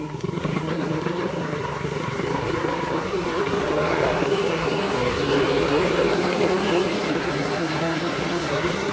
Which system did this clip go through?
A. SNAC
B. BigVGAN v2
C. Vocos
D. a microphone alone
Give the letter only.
A